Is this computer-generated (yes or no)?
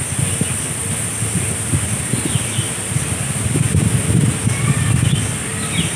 no